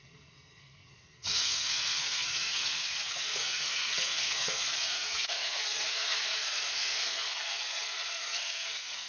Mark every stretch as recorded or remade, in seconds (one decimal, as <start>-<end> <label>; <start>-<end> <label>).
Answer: 0.0-9.1 remade

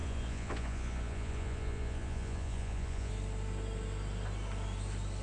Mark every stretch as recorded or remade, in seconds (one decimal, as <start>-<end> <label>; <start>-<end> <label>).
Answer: 0.0-3.1 remade; 3.1-5.2 recorded